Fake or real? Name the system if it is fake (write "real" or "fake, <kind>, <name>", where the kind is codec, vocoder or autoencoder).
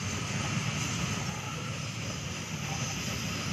real